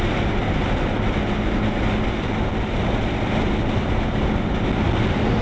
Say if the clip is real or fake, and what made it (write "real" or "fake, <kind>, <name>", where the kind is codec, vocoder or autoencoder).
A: real